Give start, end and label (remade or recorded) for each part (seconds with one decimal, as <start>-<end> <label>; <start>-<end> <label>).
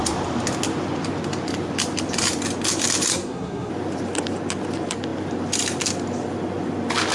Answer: 0.0-3.1 recorded; 3.1-3.7 remade; 3.7-7.1 recorded